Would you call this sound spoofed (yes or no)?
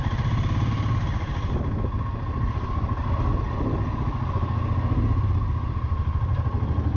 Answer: no